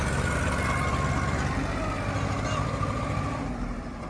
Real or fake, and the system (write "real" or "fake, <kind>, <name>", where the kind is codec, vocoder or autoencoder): real